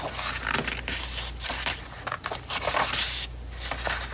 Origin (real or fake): real